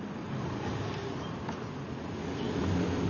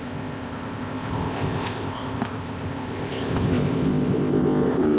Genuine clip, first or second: first